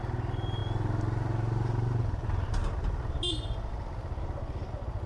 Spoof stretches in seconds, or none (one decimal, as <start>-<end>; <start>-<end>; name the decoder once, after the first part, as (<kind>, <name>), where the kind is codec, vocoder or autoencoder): none

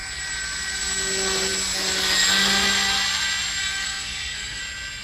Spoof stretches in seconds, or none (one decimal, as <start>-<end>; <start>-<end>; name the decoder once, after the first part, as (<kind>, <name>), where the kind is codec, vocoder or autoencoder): 3.6-4.6 (codec, SNAC)

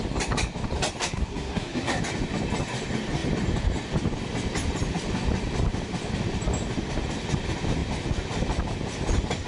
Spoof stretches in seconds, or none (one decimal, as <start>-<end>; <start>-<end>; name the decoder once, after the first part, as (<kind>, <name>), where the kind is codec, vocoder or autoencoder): 1.0-2.0 (codec, SNAC)

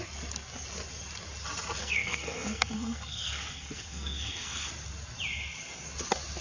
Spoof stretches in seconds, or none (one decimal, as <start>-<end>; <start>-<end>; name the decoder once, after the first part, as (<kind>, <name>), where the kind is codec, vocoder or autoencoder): 1.8-4.7 (codec, SNAC)

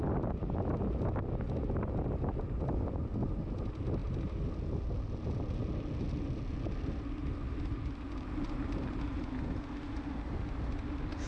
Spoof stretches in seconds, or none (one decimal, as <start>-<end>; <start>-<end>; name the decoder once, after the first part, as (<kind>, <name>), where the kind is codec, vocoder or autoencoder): none

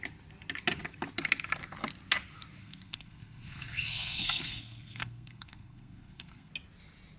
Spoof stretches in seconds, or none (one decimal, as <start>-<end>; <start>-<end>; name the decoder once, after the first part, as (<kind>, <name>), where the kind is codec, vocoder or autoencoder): 2.6-6.5 (codec, SNAC)

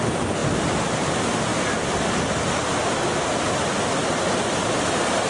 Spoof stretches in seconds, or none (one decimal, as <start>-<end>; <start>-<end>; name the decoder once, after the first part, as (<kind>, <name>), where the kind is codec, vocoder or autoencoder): none